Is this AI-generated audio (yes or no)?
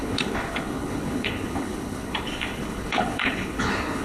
yes